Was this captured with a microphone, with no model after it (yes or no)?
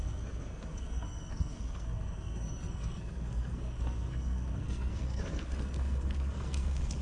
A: no